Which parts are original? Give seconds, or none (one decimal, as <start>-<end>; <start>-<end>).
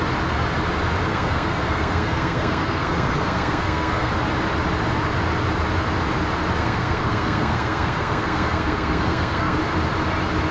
0.0-1.1; 4.1-6.6; 9.6-10.5